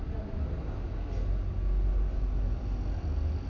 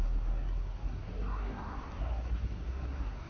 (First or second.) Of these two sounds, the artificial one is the second